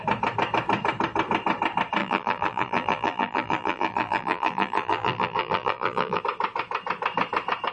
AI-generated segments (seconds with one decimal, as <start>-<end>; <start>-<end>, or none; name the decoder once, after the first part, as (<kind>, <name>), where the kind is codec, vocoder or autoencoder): 2.0-6.2 (vocoder, BigVGAN v2)